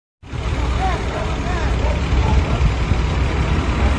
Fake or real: real